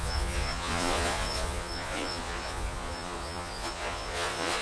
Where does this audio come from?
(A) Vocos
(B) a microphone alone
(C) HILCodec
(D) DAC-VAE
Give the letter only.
A